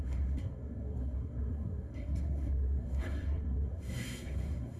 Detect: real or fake fake